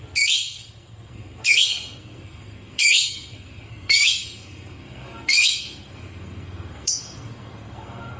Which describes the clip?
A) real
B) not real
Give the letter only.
B